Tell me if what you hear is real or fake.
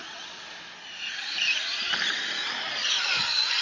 real